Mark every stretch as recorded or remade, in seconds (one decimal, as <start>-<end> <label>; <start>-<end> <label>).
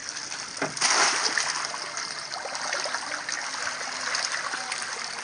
0.0-5.2 recorded